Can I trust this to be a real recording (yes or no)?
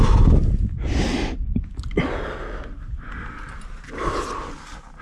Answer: yes